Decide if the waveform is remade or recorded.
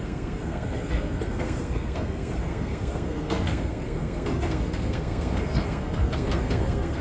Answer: remade